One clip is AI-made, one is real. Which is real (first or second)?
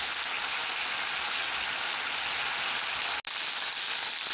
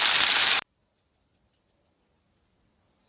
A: first